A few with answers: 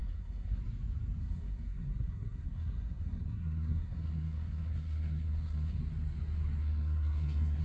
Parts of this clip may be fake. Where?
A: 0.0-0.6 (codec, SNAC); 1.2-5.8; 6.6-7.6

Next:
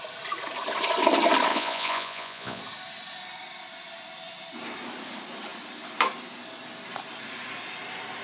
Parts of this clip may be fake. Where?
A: 1.5-2.6 (vocoder, Vocos)

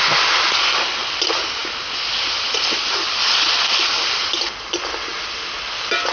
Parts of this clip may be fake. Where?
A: none

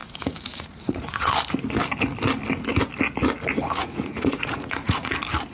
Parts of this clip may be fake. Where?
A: 0.0-1.3 (vocoder, Vocos); 3.8-5.1

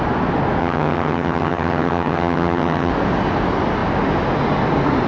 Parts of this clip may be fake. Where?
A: 0.6-2.9 (vocoder, HiFi-GAN)

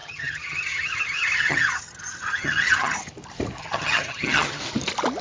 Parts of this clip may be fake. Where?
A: 0.0-3.1 (vocoder, HiFi-GAN); 3.6-4.6